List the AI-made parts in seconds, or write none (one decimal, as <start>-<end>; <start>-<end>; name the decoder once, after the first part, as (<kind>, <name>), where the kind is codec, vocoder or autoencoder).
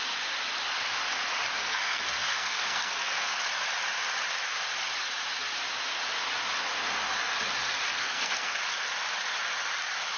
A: 1.6-3.4 (codec, SNAC); 7.9-8.6